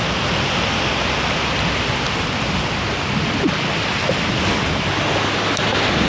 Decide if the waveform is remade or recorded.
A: recorded